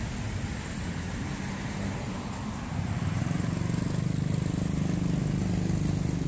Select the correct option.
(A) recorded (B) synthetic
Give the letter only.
A